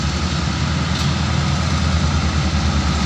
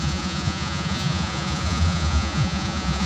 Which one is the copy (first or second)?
second